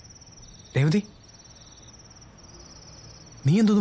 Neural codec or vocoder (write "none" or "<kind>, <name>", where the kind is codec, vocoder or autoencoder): none